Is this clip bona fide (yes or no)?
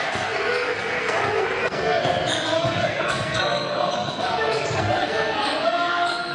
no